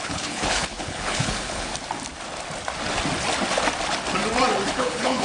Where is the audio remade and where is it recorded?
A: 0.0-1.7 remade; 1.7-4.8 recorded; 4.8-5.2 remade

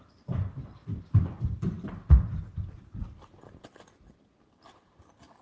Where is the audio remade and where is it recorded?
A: 0.0-5.4 recorded

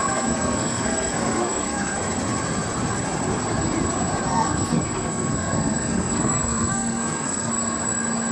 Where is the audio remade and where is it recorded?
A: 0.0-2.0 remade; 2.0-4.3 recorded; 4.3-7.5 remade; 7.5-8.3 recorded